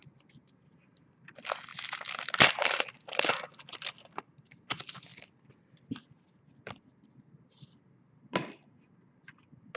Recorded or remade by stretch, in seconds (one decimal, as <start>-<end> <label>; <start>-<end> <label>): 0.0-9.8 recorded